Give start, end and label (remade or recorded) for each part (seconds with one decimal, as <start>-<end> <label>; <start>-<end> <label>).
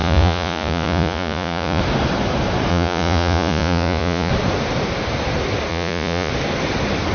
0.0-1.8 remade; 1.8-2.7 recorded; 2.7-4.3 remade; 4.3-5.7 recorded; 5.7-6.3 remade; 6.3-7.1 recorded